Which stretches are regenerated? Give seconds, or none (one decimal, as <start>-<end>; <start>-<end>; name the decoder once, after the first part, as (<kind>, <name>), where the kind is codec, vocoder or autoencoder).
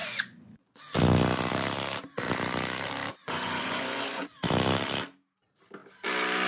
0.0-0.8 (vocoder, Vocos); 3.1-4.3